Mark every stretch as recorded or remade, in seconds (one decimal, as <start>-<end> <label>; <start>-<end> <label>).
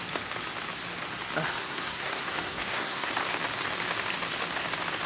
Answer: 0.0-1.6 recorded; 1.6-3.1 remade; 3.1-5.1 recorded